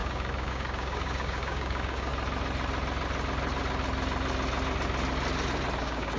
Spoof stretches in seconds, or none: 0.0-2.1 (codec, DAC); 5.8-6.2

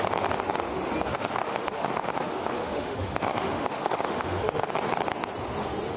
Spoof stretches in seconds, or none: 1.1-4.7 (autoencoder, DAC-VAE)

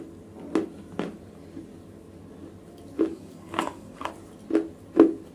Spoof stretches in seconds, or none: 3.1-4.1 (codec, DAC)